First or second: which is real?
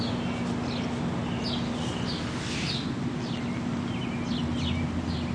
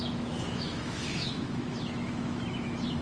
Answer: first